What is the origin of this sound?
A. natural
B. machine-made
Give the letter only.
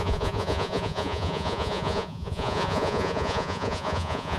B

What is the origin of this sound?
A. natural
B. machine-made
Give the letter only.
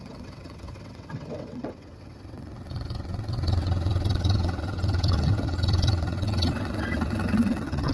B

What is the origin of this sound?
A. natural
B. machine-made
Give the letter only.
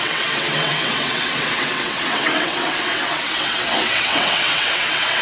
B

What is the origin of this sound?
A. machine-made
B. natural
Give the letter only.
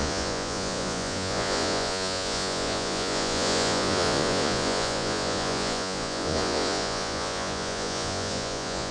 A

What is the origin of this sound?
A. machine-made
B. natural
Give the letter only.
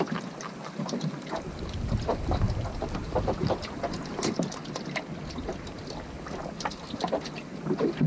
B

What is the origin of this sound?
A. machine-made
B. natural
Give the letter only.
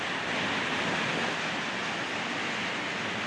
B